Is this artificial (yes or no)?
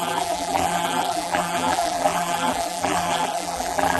yes